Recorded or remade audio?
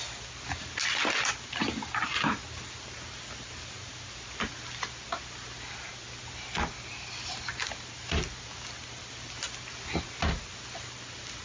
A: recorded